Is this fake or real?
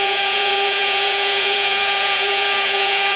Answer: fake